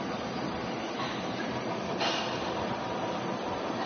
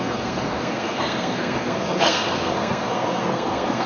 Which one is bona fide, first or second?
first